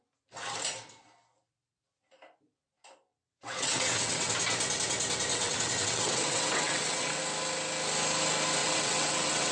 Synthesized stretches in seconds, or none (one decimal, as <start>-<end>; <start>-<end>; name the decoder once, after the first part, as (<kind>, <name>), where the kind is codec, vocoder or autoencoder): 3.1-4.3 (vocoder, WaveNeXt); 5.3-7.2; 8.6-9.5